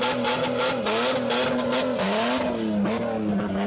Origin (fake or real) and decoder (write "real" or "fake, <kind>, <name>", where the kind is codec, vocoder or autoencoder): real